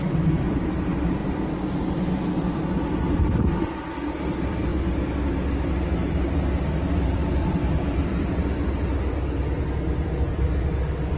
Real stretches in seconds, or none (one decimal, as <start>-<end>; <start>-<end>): 4.7-6.6; 8.4-10.3